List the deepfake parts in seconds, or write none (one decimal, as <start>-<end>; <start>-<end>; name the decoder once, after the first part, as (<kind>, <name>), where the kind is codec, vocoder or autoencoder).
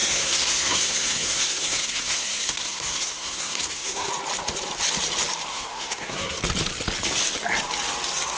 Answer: 0.0-4.1 (codec, SNAC); 5.5-6.4